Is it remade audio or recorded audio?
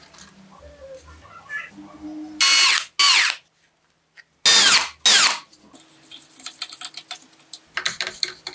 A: recorded